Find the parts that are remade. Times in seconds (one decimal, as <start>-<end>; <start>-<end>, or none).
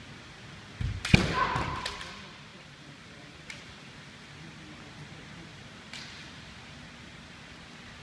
2.5-3.9; 5.5-6.6